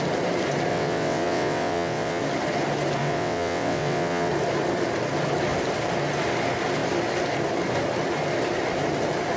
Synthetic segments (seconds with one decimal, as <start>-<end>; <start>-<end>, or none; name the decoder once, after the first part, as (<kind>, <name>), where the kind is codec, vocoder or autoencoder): 0.7-2.2 (vocoder, WaveNeXt); 3.0-4.3